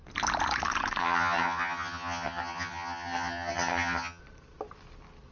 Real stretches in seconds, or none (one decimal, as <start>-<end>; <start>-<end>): 0.0-1.0; 4.2-5.3